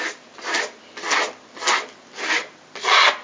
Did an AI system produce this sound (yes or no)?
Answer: no